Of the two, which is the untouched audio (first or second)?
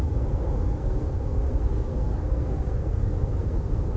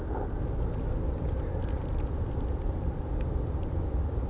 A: second